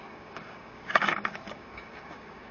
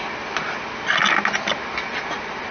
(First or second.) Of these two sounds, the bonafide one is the second